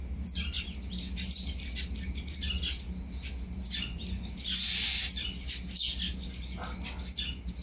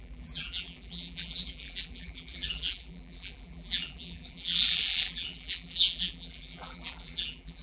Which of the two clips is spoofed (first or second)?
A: second